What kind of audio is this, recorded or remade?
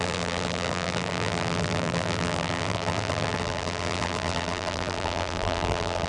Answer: remade